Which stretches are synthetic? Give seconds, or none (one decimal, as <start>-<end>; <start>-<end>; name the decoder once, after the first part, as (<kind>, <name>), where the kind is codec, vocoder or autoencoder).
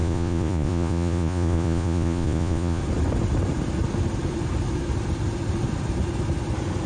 0.0-2.8 (vocoder, Vocos)